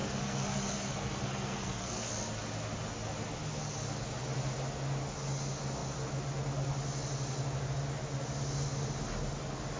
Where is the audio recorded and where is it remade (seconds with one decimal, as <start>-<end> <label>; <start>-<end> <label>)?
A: 0.0-2.1 remade; 2.1-9.8 recorded